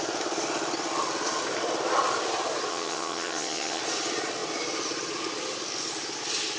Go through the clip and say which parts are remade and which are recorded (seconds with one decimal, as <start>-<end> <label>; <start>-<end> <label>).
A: 0.0-2.7 recorded; 2.7-3.8 remade; 3.8-6.6 recorded